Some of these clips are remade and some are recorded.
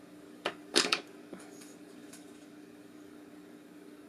remade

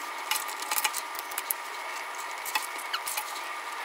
recorded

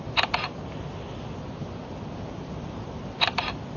recorded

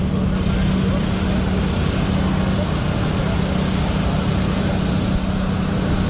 recorded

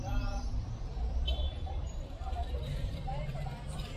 remade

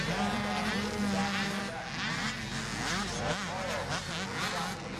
recorded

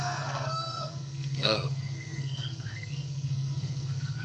remade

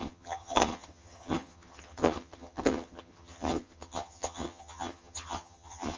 remade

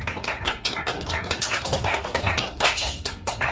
remade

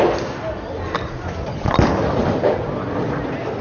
recorded